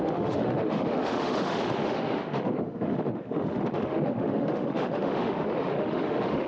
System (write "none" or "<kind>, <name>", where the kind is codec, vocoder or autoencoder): autoencoder, DAC-VAE